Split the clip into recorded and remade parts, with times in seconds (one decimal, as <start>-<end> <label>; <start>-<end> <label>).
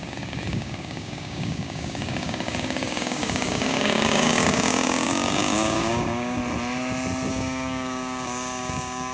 0.0-6.4 remade; 6.4-7.3 recorded; 7.3-9.1 remade